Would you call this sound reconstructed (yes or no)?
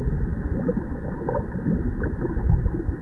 no